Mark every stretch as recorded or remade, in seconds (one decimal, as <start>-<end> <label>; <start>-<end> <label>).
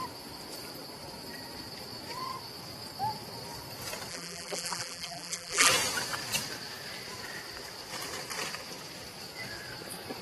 0.0-4.1 recorded; 4.1-5.7 remade; 5.7-10.2 recorded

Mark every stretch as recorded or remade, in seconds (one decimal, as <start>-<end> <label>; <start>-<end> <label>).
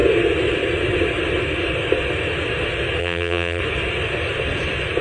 0.0-3.0 recorded; 3.0-3.6 remade; 3.6-5.0 recorded